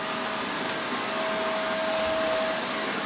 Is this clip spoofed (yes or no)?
no